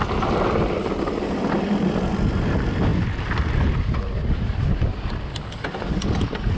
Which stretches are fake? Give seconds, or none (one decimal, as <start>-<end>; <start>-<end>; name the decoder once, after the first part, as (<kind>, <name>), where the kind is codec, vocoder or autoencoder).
none